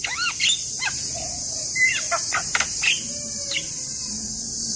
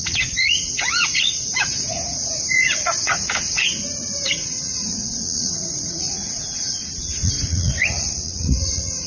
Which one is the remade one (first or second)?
second